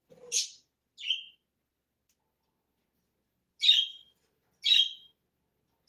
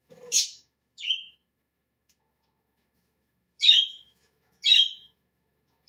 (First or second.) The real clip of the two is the first